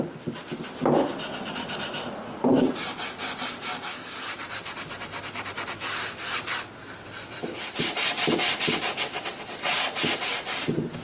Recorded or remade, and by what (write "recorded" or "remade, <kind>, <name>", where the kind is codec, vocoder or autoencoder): recorded